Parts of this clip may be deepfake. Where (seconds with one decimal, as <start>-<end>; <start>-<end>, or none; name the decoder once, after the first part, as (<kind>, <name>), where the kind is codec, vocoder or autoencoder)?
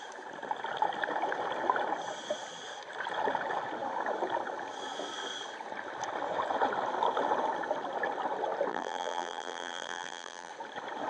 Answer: 8.7-10.5 (vocoder, BigVGAN v2)